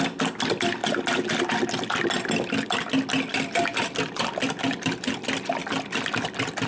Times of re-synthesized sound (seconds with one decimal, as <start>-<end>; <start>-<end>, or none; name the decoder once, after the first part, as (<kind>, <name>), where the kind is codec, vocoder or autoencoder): none